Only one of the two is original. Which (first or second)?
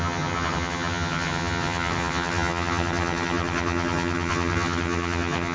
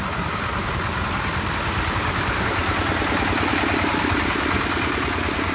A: second